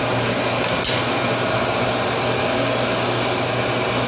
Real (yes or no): yes